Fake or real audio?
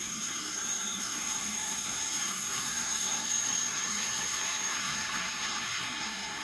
fake